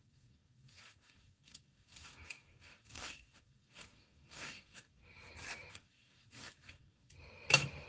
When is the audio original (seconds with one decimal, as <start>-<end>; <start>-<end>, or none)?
5.0-5.7; 7.1-7.9